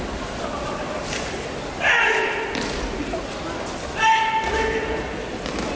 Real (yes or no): yes